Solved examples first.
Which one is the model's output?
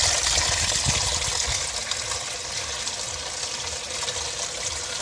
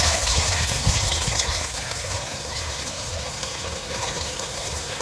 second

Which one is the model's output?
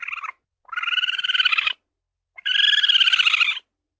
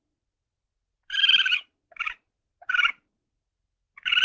second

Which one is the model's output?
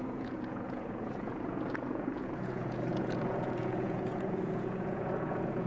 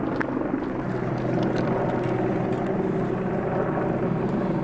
first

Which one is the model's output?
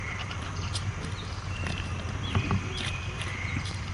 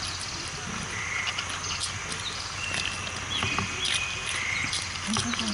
first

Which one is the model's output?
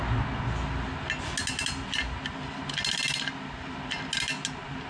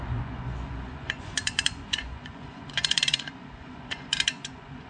second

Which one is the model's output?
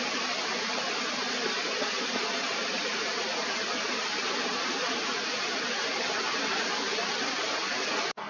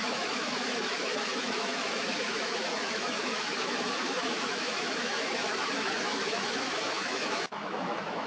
second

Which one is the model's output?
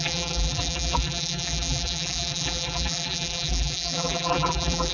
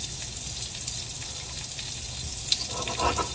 first